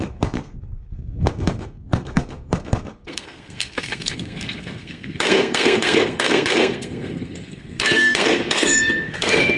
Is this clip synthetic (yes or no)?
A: yes